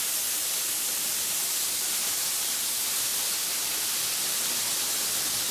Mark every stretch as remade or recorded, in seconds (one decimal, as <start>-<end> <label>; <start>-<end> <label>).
0.0-5.5 remade